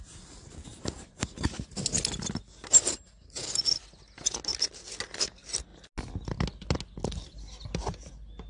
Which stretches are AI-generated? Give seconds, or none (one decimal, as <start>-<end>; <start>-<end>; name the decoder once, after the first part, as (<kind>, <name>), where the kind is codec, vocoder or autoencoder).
0.7-1.3 (vocoder, BigVGAN v2)